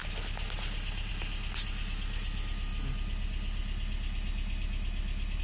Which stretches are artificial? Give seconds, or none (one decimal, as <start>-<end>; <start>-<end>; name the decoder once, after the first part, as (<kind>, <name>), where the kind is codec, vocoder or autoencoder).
none